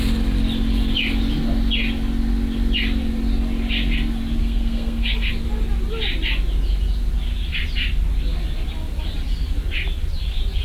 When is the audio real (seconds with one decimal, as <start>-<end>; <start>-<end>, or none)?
0.0-4.4; 5.3-10.6